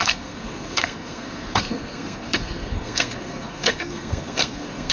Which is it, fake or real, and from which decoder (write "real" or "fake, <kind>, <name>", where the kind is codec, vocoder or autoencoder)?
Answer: fake, codec, SNAC